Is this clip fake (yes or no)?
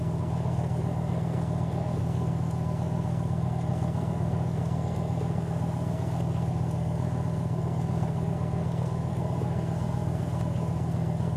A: yes